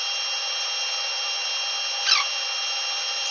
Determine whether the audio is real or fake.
real